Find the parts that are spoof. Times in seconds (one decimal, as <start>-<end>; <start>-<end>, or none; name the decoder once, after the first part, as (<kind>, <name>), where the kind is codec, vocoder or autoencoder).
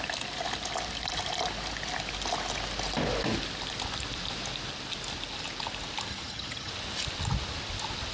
6.1-6.7 (vocoder, HiFi-GAN)